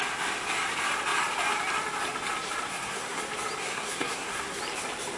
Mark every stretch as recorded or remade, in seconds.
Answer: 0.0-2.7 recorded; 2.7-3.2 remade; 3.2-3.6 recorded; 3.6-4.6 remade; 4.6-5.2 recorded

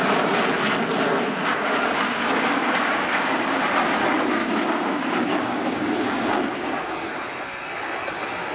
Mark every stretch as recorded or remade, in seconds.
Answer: 0.0-1.5 recorded; 1.5-3.6 remade; 3.6-4.4 recorded; 4.4-7.1 remade; 7.1-8.5 recorded